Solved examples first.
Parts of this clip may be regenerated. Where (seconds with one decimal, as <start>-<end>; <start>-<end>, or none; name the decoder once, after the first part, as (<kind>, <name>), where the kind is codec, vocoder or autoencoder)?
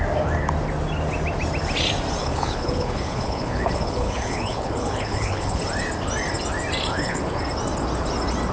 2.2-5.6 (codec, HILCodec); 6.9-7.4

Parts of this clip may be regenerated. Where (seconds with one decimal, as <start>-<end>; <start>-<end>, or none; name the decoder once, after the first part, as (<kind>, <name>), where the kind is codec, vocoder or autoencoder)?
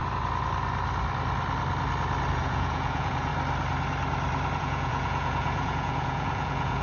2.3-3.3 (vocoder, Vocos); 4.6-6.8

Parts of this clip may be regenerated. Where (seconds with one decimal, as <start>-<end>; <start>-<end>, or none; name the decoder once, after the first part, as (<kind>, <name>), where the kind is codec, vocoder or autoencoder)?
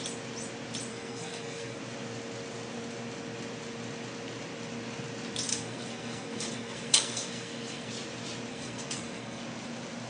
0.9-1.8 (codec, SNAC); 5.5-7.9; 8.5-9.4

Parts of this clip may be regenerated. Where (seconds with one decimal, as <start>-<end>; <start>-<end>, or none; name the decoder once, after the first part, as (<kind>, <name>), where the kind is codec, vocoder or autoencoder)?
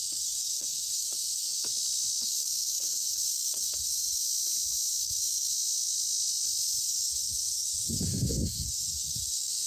0.0-1.7 (codec, SNAC); 2.2-4.2; 5.0-5.5; 6.8-9.7